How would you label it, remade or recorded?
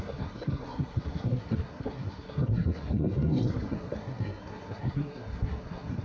remade